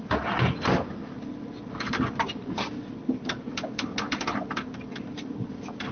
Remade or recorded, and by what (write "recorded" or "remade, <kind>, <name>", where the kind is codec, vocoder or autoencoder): recorded